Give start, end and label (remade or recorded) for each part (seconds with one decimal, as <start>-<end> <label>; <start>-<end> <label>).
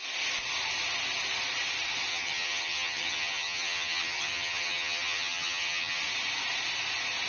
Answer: 0.0-2.1 recorded; 2.1-6.0 remade; 6.0-7.3 recorded